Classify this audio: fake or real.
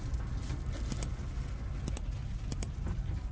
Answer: real